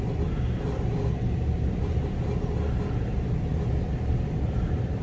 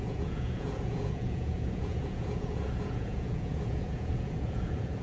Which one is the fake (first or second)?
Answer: second